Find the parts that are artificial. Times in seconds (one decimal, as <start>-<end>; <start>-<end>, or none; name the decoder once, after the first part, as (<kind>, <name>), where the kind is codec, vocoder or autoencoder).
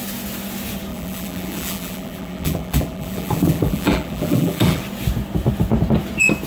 0.9-4.8 (vocoder, BigVGAN v2)